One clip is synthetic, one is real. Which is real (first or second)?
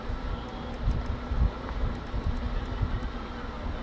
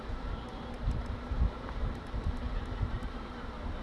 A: first